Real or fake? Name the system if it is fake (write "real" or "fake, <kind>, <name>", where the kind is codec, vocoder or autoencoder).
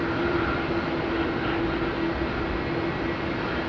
real